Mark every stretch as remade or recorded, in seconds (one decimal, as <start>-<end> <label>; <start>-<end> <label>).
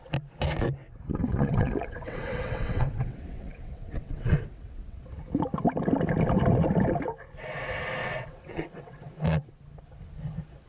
0.0-0.8 recorded; 0.8-5.2 remade; 5.2-8.0 recorded; 8.0-9.5 remade; 9.5-10.7 recorded